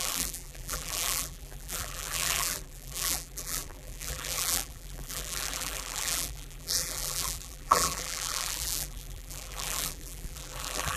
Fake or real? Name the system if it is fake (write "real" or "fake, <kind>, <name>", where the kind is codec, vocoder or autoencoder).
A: fake, vocoder, BigVGAN v2